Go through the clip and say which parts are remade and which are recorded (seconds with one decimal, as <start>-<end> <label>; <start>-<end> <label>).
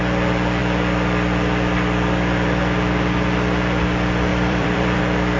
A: 0.0-4.3 recorded; 4.3-5.0 remade; 5.0-5.4 recorded